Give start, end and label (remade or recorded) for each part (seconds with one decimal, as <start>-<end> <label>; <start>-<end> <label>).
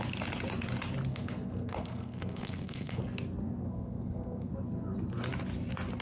0.0-1.1 recorded; 1.1-3.0 remade; 3.0-3.6 recorded; 3.6-4.5 remade; 4.5-6.0 recorded